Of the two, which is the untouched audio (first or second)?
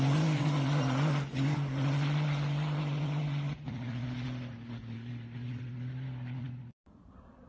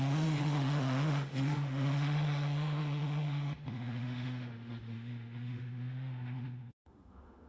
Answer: first